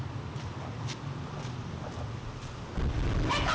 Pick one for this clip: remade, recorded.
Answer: recorded